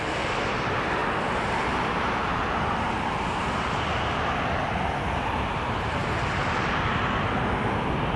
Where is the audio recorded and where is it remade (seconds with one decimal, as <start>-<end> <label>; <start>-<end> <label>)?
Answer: 0.0-8.2 recorded